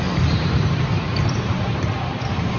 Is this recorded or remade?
remade